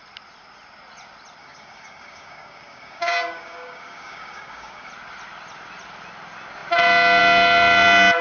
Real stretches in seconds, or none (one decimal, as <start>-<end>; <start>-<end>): 0.0-1.4; 4.9-8.2